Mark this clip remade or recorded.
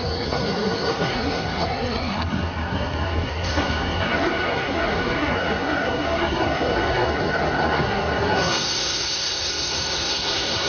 remade